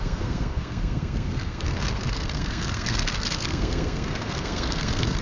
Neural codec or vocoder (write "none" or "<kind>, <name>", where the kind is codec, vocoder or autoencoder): codec, SNAC